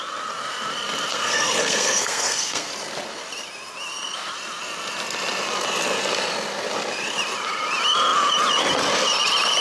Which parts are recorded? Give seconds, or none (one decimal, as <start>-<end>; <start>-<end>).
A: 0.0-1.1; 2.7-9.6